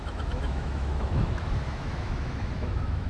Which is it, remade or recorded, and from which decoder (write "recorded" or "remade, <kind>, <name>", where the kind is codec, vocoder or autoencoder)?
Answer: remade, autoencoder, DAC-VAE